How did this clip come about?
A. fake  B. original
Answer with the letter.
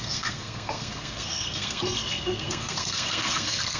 A